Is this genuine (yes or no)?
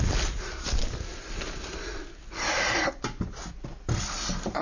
yes